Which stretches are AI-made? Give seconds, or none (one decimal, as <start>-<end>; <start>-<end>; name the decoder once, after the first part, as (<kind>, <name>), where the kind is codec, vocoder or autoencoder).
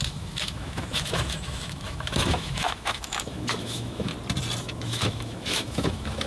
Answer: 0.0-4.1 (autoencoder, DAC-VAE); 4.6-6.3